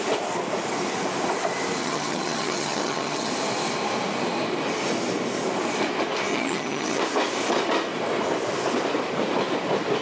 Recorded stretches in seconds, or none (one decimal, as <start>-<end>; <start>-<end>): 0.0-1.8; 3.3-6.3; 7.0-10.0